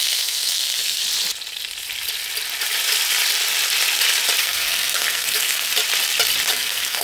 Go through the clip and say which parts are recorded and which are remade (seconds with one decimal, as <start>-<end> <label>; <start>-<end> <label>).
0.0-1.0 remade; 1.0-4.4 recorded; 4.4-5.7 remade; 5.7-6.5 recorded; 6.5-7.0 remade